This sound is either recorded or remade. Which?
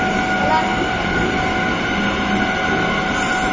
recorded